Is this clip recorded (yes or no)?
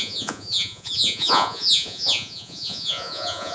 no